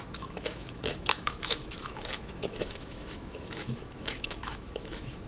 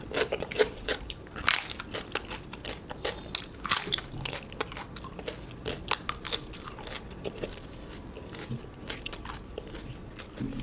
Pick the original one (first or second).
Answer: second